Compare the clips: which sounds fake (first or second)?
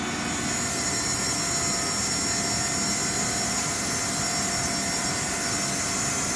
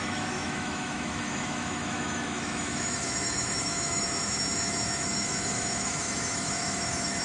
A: second